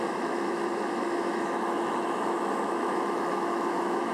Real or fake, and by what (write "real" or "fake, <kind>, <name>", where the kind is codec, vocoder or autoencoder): fake, autoencoder, DAC-VAE